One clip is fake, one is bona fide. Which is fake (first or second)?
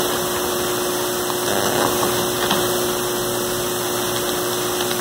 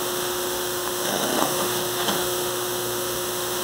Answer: second